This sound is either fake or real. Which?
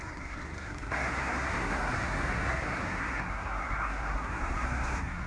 fake